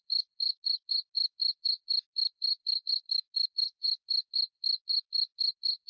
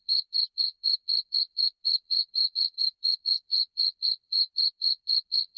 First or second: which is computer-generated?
second